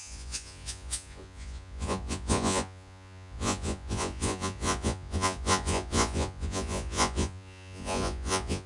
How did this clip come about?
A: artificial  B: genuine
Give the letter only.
A